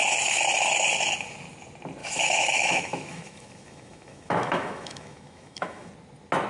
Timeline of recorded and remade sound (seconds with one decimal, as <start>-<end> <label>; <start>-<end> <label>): 0.0-2.0 recorded; 2.0-5.9 remade; 5.9-6.5 recorded